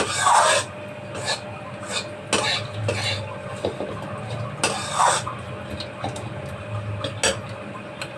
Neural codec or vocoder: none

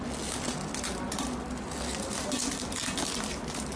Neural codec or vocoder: none